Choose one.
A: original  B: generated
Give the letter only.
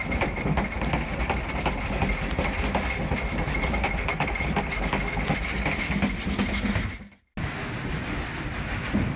A